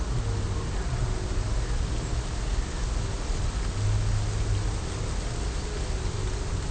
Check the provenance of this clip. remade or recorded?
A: recorded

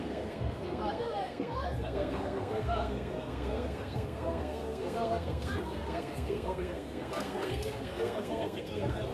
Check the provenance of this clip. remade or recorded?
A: remade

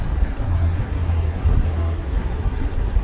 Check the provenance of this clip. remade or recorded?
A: remade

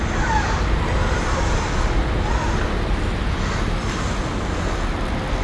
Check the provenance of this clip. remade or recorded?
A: recorded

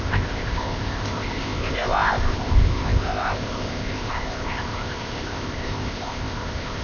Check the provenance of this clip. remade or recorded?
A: remade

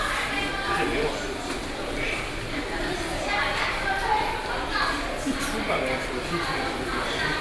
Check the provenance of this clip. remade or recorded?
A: remade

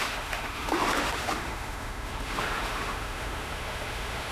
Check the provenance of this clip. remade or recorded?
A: remade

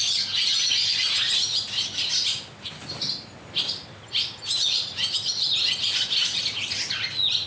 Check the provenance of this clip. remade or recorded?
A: recorded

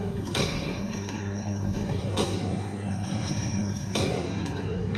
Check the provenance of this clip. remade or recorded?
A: remade